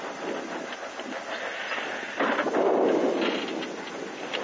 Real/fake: real